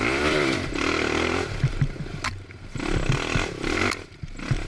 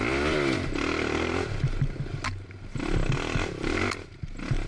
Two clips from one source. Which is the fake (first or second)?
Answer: first